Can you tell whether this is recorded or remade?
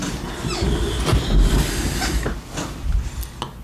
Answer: recorded